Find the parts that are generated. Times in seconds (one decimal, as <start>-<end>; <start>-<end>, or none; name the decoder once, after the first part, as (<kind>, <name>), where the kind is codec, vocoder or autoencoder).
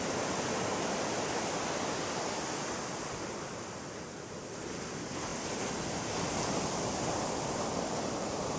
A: none